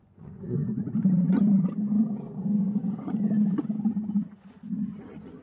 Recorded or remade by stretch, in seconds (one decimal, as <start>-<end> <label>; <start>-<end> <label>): 0.0-5.4 remade